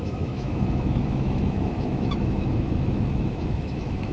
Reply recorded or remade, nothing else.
remade